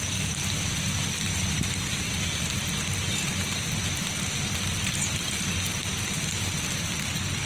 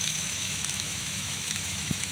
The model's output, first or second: second